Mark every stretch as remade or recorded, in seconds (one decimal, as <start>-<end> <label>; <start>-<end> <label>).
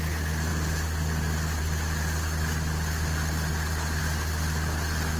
0.0-5.2 recorded